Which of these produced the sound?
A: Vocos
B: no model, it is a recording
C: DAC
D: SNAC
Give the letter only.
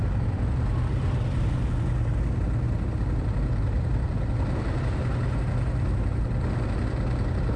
B